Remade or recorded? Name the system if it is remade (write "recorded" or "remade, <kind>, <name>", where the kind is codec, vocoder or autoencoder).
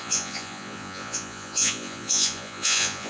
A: remade, vocoder, Vocos